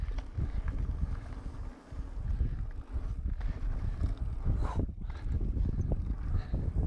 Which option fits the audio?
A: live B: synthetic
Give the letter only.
A